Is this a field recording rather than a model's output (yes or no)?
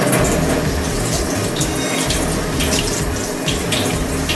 yes